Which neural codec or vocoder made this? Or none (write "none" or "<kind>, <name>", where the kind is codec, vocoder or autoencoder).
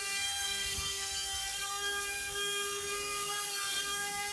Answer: codec, SNAC